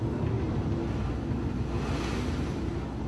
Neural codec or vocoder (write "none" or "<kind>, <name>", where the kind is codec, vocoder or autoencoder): none